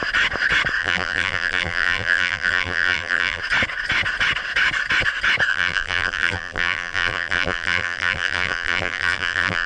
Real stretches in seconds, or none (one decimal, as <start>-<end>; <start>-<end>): 0.0-0.8; 3.4-5.5

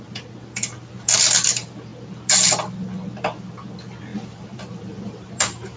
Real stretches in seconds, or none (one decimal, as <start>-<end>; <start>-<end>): 0.0-4.1